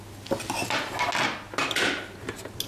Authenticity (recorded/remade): recorded